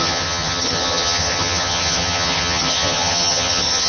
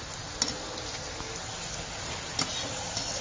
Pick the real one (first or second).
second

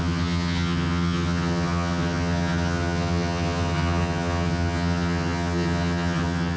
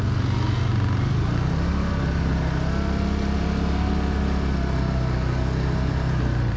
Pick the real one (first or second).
second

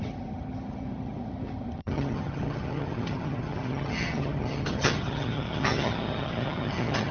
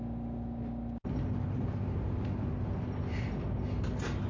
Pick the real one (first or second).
second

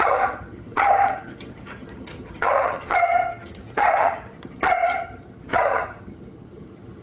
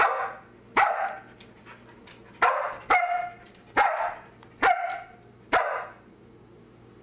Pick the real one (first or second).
second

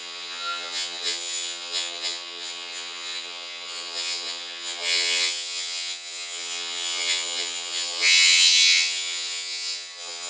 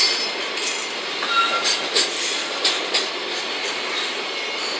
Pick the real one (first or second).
second